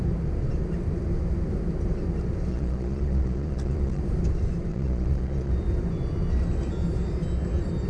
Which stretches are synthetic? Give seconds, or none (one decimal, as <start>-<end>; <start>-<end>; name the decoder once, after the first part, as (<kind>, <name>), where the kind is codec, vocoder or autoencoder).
2.5-4.0 (vocoder, Vocos); 4.7-5.5